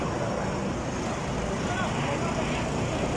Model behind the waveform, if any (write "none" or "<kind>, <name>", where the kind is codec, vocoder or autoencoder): none